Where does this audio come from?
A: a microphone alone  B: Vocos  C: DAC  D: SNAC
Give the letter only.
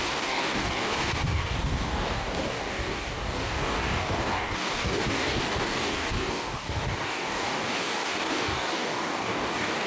C